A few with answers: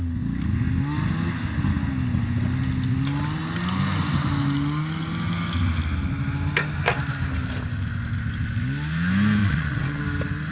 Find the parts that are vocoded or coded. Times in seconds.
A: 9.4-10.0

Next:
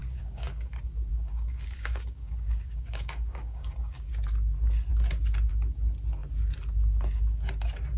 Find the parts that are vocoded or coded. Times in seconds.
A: 0.0-0.7; 1.1-4.1

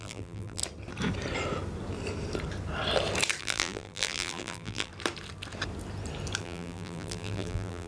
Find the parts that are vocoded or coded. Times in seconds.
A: 0.0-0.6; 3.4-4.9; 6.4-7.9

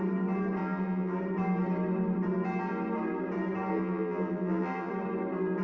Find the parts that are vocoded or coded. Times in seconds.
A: 0.6-1.2; 3.7-4.9

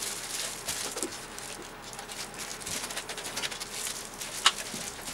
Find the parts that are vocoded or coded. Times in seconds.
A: none

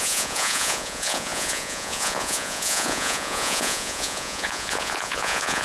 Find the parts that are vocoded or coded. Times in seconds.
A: 0.0-5.6

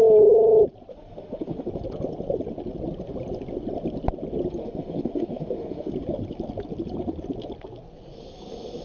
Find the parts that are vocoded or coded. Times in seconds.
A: 0.9-1.7; 4.6-5.9